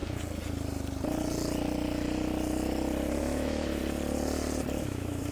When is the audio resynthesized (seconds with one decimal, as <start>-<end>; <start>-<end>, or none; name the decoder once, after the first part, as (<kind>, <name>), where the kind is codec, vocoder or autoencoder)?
3.2-3.8 (autoencoder, DAC-VAE); 4.8-5.3